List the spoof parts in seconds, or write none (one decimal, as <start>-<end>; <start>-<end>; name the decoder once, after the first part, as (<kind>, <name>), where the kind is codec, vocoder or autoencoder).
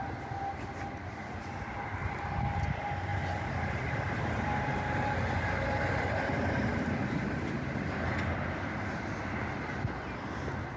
2.0-2.6 (vocoder, BigVGAN v2); 3.1-7.7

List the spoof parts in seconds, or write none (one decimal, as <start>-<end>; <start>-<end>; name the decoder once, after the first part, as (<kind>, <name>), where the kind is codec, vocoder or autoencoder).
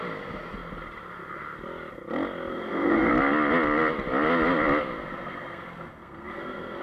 2.5-3.1 (codec, SNAC); 5.1-6.8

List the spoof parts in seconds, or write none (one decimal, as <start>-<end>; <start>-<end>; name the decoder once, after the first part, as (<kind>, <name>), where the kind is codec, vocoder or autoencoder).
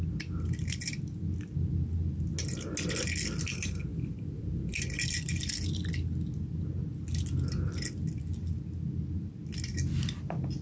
3.9-5.5 (vocoder, BigVGAN v2)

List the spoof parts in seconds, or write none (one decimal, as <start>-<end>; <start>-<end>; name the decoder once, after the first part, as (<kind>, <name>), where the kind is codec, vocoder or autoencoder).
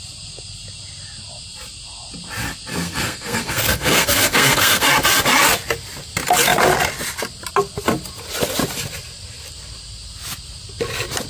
2.7-4.9 (codec, SNAC)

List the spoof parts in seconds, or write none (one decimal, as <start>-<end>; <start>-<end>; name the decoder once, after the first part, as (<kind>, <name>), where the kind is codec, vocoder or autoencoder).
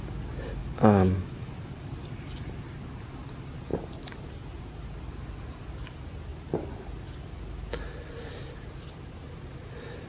0.6-1.5 (autoencoder, DAC-VAE)